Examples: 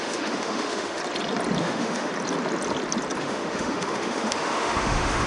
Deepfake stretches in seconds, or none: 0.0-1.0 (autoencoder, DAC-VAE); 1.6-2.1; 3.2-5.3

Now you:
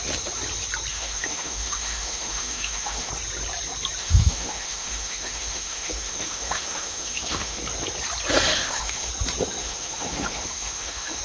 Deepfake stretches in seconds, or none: 0.9-3.1 (autoencoder, DAC-VAE); 4.0-7.6; 8.5-9.1; 9.6-11.2

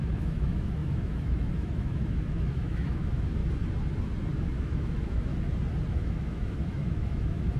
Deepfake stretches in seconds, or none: 0.0-3.4 (autoencoder, DAC-VAE); 4.4-5.3; 5.9-7.6

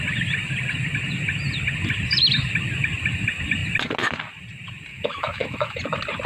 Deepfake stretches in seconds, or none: 4.9-5.8 (autoencoder, DAC-VAE)

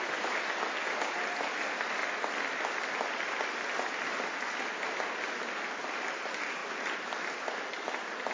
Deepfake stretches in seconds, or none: none

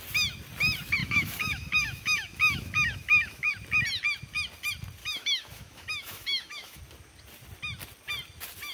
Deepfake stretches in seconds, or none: 1.0-3.5 (autoencoder, DAC-VAE); 5.0-6.8

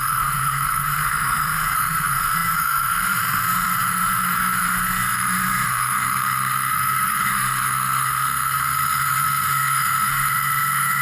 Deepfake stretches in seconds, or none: 0.0-11.0 (autoencoder, DAC-VAE)

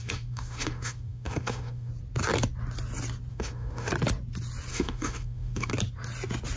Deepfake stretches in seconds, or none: 0.0-1.9 (autoencoder, DAC-VAE); 3.3-3.9; 4.7-5.7